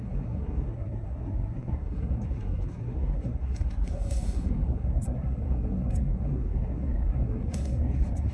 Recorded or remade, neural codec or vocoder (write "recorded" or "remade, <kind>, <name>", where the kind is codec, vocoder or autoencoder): remade, codec, SNAC